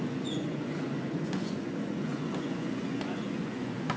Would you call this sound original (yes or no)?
no